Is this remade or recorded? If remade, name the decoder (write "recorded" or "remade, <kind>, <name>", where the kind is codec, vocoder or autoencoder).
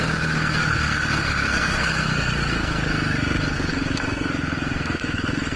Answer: remade, codec, SNAC